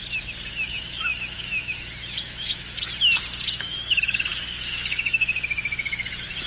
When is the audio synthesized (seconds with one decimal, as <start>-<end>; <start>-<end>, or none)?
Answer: 0.5-2.9; 3.5-6.5